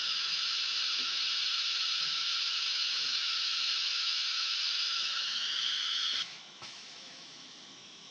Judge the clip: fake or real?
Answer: fake